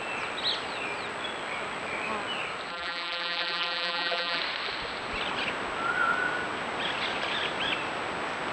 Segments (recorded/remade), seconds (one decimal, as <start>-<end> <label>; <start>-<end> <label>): 0.0-2.7 recorded; 2.7-4.4 remade; 4.4-8.5 recorded